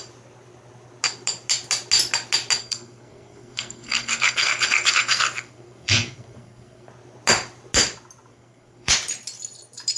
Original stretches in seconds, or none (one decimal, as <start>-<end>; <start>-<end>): 0.0-2.6; 6.9-8.3; 8.9-10.0